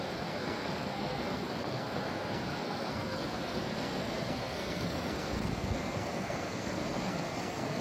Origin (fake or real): fake